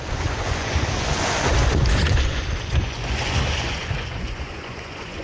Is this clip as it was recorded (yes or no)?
no